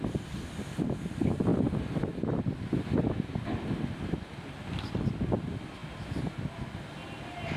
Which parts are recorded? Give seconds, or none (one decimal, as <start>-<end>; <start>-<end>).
0.0-7.6